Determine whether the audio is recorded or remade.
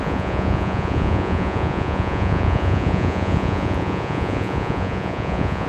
remade